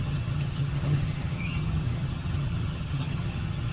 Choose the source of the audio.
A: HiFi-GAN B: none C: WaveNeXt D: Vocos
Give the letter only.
A